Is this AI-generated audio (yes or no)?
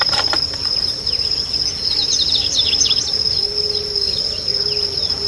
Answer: no